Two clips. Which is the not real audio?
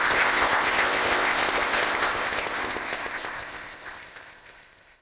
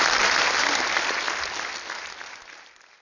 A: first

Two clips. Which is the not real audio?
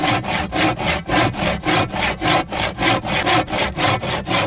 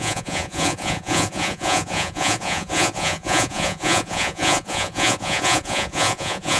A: second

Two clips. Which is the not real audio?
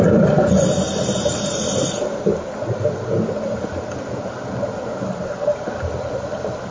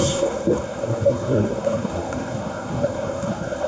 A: second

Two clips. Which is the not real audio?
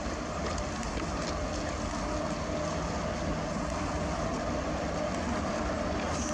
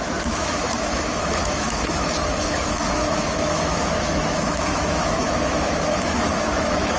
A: second